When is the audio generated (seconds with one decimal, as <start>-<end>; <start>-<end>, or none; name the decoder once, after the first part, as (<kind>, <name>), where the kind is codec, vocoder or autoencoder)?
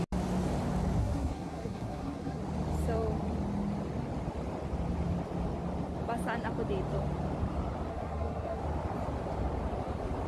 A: 1.0-2.4 (codec, SNAC); 7.9-8.6